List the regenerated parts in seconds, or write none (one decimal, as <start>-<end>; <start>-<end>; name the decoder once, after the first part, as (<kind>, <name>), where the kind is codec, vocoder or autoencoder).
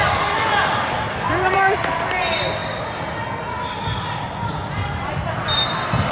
none